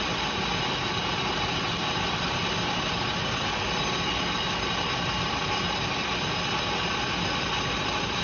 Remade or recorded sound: recorded